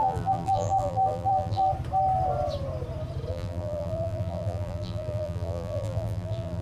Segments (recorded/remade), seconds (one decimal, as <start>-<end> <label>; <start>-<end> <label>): 0.0-1.7 remade; 1.7-3.3 recorded; 3.3-6.6 remade